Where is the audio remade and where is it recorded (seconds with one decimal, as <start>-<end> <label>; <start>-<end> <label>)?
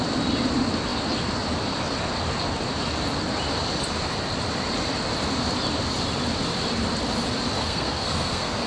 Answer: 0.0-7.6 recorded; 7.6-8.7 remade